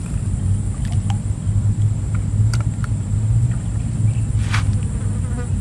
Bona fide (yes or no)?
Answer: yes